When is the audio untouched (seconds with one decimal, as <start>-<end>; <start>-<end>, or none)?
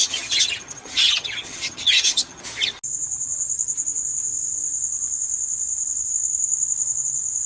2.4-7.5